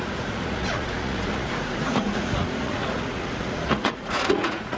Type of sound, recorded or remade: remade